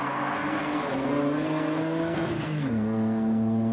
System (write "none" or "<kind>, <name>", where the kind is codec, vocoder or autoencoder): codec, SNAC